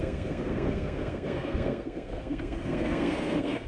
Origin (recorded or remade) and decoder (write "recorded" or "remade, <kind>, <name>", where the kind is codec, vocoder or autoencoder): remade, codec, SNAC